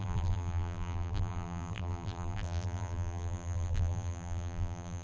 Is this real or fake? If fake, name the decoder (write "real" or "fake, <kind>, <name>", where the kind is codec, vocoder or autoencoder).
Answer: fake, vocoder, BigVGAN v2